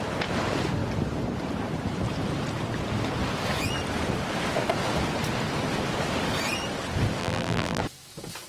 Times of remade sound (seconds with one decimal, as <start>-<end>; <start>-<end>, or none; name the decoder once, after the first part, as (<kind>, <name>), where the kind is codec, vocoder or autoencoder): 7.2-7.8 (vocoder, BigVGAN v2)